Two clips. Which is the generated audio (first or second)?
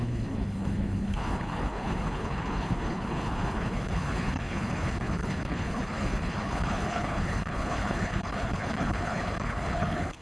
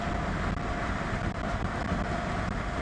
first